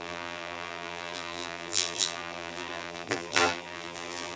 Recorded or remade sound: remade